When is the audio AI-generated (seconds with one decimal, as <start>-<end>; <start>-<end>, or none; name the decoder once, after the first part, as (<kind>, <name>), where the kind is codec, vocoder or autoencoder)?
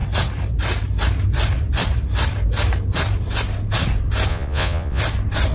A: 4.3-5.0 (vocoder, Vocos)